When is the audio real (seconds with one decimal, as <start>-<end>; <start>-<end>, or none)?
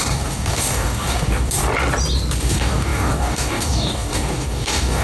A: 1.6-2.4